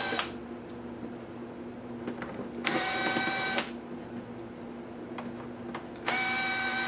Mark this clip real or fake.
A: real